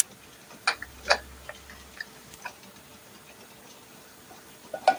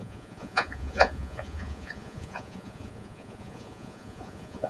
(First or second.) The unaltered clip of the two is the first